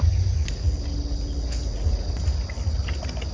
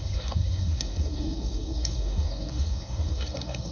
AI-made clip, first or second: second